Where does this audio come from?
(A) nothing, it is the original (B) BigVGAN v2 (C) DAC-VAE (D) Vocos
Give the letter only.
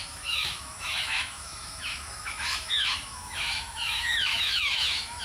C